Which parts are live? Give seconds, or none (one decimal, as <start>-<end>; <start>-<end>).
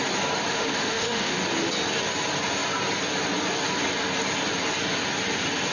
0.0-0.5; 1.4-5.7